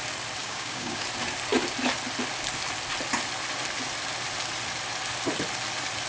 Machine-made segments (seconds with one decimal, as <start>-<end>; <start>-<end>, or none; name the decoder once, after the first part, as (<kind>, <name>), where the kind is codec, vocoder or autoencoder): 0.4-1.0 (codec, DAC)